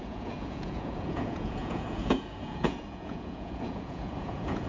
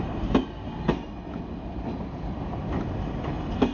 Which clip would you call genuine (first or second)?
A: second